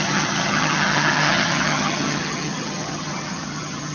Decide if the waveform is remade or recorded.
remade